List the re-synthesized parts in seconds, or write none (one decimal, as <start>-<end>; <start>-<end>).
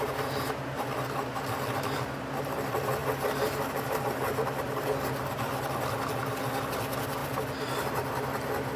none